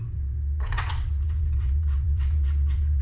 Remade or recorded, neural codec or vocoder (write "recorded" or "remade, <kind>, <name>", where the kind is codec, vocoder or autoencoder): remade, vocoder, WaveNeXt